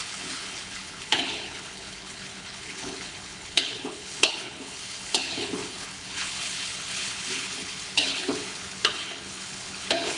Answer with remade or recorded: remade